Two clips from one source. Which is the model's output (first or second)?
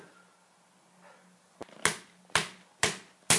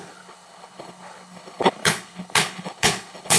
second